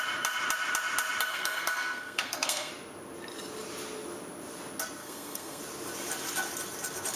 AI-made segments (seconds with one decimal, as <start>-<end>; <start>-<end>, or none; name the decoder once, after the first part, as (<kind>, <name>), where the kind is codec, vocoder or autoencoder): 1.3-2.7 (codec, SNAC); 5.0-5.6